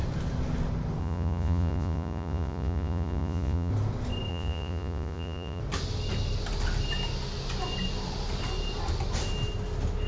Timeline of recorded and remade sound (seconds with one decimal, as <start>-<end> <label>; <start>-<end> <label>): 0.0-1.0 recorded; 1.0-3.7 remade; 3.7-4.3 recorded; 4.3-5.6 remade; 5.6-10.1 recorded